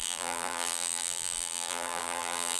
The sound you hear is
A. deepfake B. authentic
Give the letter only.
A